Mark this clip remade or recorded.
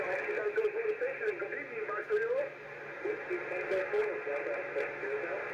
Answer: recorded